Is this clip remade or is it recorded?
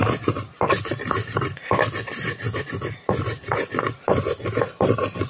recorded